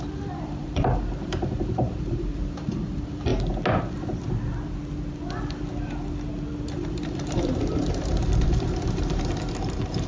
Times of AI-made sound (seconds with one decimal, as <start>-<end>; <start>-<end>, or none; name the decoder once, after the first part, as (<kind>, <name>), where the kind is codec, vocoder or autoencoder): 0.0-3.3 (vocoder, BigVGAN v2); 6.9-10.1